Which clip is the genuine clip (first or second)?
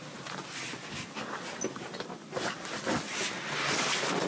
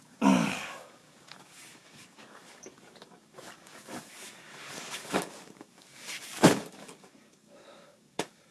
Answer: first